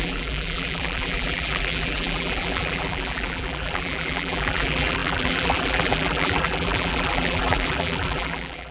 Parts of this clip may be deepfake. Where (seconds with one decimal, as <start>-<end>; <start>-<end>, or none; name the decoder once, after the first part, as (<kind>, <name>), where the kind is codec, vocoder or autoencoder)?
0.0-8.7 (vocoder, BigVGAN v2)